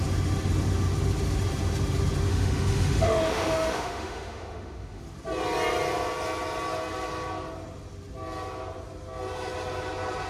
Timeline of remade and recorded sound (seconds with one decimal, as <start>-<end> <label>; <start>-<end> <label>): 0.0-2.3 recorded; 2.3-5.0 remade; 5.0-10.3 recorded

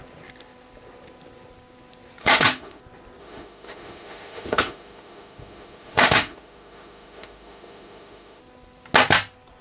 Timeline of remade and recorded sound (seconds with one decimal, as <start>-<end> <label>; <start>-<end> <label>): 0.0-2.2 recorded; 2.2-2.8 remade; 2.8-3.2 recorded; 3.2-8.4 remade; 8.4-9.6 recorded

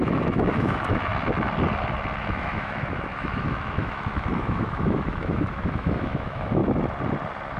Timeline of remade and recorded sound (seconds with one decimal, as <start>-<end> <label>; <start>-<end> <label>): 0.0-1.1 remade; 1.1-2.2 recorded; 2.2-6.6 remade; 6.6-7.6 recorded